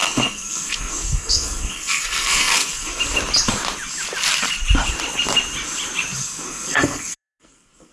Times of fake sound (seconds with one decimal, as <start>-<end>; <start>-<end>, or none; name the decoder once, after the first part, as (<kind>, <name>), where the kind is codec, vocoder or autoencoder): 0.0-3.0 (codec, SNAC); 6.2-7.9